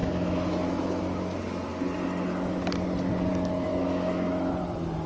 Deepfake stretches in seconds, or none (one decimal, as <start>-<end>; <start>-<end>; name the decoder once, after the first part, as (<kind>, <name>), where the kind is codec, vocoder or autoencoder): 0.0-1.0 (autoencoder, DAC-VAE); 3.7-4.5